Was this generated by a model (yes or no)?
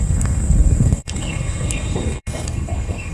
yes